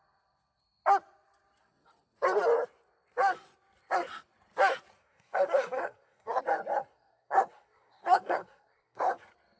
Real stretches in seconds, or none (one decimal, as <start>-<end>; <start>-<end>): 0.0-5.0; 6.4-6.9; 9.2-9.6

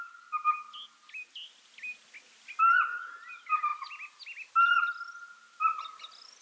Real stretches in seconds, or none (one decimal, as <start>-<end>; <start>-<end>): 0.0-6.4

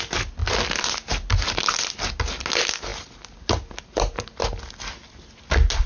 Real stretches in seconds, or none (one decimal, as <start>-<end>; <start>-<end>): 0.0-5.9

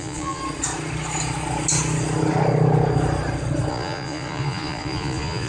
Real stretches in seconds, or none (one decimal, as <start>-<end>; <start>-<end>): 0.4-3.7

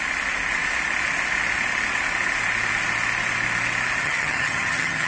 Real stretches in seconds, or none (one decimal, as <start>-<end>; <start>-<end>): 0.0-4.0